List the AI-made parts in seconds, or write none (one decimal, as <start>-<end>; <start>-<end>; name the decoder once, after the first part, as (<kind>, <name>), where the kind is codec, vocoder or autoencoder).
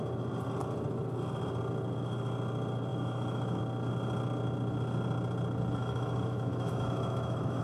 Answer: 2.9-3.6 (autoencoder, DAC-VAE); 5.8-7.6